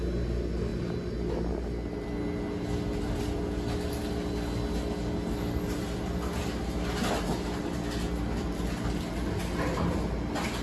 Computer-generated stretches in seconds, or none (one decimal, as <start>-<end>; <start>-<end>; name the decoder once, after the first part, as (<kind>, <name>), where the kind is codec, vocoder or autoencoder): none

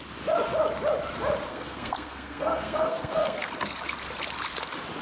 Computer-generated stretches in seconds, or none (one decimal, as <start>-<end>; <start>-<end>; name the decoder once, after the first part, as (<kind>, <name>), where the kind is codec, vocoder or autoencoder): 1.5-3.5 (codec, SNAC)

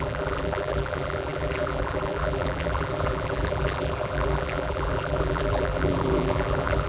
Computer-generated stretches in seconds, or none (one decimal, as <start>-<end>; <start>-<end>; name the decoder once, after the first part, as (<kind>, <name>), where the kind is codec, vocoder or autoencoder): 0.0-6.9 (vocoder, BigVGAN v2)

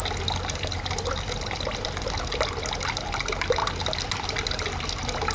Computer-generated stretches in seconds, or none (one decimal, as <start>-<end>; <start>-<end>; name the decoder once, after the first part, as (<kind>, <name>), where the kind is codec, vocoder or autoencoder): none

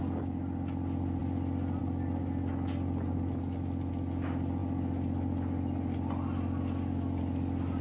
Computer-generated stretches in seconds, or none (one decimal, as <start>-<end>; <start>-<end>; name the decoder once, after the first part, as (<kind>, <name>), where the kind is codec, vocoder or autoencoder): none

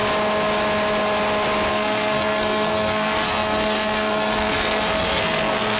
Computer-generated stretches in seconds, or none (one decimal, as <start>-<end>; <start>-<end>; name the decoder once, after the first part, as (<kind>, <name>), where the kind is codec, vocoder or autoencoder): 1.7-5.8 (codec, SNAC)